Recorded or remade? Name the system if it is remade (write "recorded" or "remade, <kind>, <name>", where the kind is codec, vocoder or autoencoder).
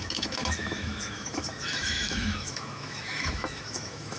remade, autoencoder, DAC-VAE